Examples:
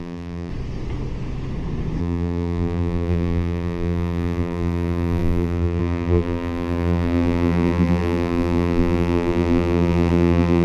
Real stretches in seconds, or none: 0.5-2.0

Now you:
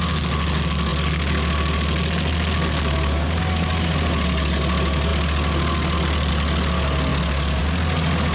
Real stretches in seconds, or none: 0.0-8.3

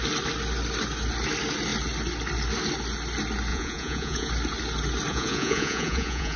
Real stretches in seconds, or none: 0.0-3.5; 4.3-5.1

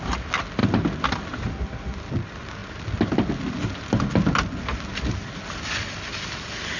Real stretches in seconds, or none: 0.0-6.8